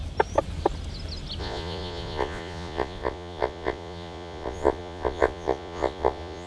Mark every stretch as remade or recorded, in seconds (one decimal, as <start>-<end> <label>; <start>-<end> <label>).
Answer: 0.0-1.4 recorded; 1.4-6.5 remade